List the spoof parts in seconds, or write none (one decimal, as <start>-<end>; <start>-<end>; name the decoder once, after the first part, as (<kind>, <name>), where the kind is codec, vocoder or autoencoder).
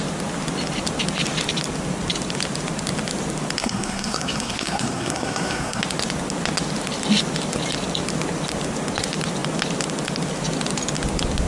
3.6-5.8 (codec, SNAC)